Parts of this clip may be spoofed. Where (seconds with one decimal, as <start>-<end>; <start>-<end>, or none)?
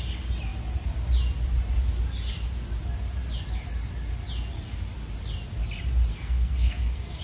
6.1-7.2